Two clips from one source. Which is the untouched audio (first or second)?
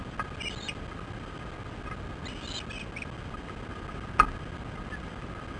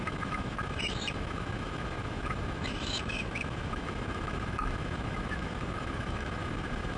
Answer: first